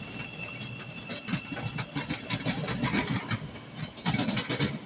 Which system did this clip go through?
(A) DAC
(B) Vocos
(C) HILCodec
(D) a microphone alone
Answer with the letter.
D